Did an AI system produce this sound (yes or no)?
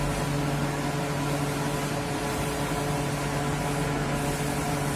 no